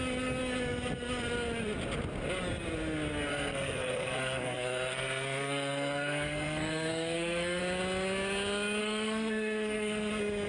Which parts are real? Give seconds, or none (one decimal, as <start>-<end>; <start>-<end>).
0.0-3.3; 7.6-8.8; 10.1-10.5